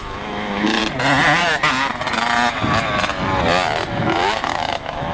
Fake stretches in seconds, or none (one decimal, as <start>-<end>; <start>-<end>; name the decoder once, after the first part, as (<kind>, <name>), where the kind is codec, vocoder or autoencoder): 0.0-0.8 (autoencoder, DAC-VAE); 3.9-5.1